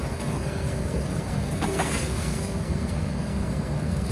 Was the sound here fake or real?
fake